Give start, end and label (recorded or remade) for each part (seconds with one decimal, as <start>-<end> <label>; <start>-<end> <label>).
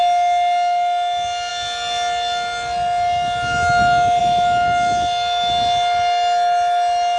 0.0-7.2 recorded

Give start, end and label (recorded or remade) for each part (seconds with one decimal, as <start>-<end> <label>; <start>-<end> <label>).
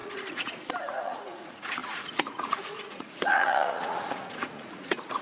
0.0-5.2 remade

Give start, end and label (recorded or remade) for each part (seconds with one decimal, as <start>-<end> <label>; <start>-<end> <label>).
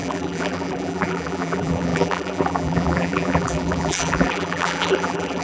0.0-5.4 remade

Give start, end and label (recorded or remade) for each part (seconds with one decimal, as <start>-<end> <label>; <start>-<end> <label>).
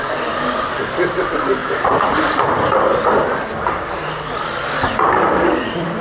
0.0-1.6 recorded; 1.6-2.2 remade; 2.2-6.0 recorded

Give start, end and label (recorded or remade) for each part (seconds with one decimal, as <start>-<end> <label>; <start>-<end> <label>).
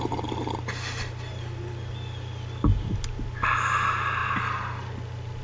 0.0-5.4 recorded